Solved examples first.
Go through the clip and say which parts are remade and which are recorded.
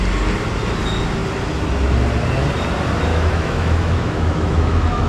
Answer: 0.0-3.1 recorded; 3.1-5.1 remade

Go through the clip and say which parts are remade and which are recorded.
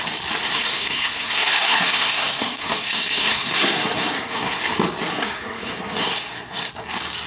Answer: 0.0-0.4 recorded; 0.4-4.6 remade; 4.6-5.1 recorded; 5.1-6.7 remade; 6.7-7.3 recorded